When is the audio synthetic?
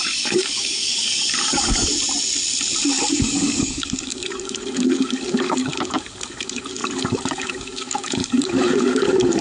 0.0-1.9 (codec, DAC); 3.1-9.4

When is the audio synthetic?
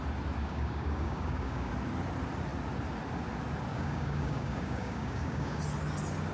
0.4-1.7 (codec, DAC); 3.7-5.6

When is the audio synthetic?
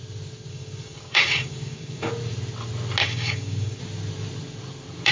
0.5-2.1 (codec, DAC); 3.0-3.8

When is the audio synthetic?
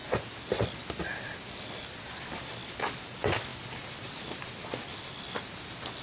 none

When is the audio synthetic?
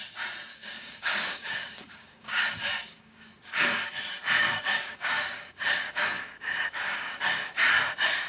0.5-4.0 (codec, DAC); 4.4-7.6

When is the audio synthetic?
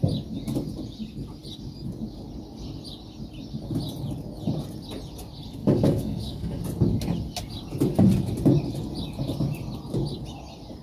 5.6-6.6 (codec, DAC)